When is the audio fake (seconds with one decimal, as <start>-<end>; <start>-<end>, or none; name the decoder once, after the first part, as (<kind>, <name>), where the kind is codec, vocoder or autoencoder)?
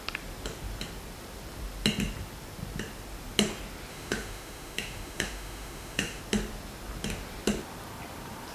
3.9-6.2 (autoencoder, DAC-VAE)